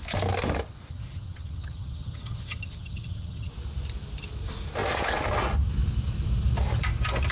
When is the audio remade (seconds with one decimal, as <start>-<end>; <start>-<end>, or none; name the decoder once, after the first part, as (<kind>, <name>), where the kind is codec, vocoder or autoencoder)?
0.9-3.5 (vocoder, HiFi-GAN)